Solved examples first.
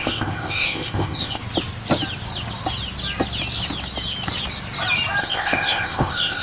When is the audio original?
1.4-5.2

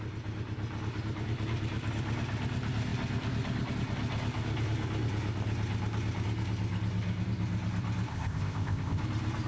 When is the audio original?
0.0-8.1; 9.0-9.5

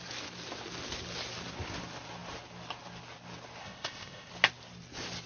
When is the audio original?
0.0-3.6; 4.3-5.3

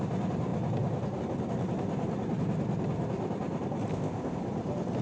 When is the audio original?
0.0-3.9; 4.4-5.0

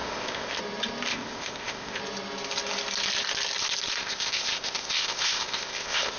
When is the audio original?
0.6-1.1; 2.0-4.0

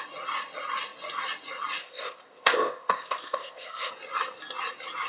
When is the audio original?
0.0-1.8; 3.9-5.1

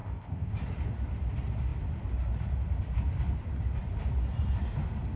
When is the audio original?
0.5-5.2